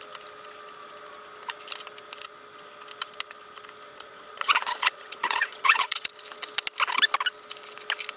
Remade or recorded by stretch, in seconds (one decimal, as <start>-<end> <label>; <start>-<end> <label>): 0.0-3.9 recorded; 3.9-6.1 remade; 6.1-8.2 recorded